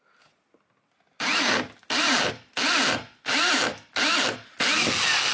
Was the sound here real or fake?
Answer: real